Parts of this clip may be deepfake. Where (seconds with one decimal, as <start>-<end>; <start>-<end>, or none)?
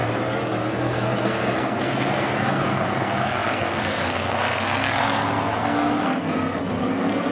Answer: 0.7-7.3